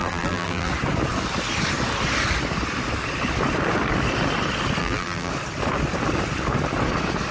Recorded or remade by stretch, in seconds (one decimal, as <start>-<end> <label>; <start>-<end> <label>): 0.0-0.7 remade; 0.7-4.8 recorded; 4.8-5.3 remade; 5.3-7.3 recorded